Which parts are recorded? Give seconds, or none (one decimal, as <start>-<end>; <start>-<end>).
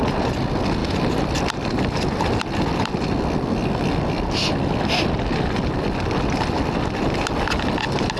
0.0-8.2